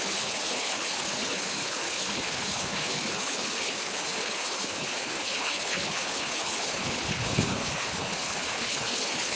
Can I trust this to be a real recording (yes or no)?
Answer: no